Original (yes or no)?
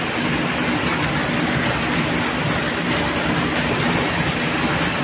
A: yes